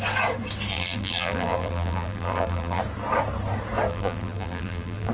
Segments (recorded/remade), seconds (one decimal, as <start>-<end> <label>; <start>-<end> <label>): 0.0-0.7 recorded; 0.7-2.8 remade; 2.8-3.9 recorded; 3.9-5.1 remade